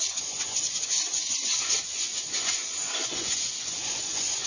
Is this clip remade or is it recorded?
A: remade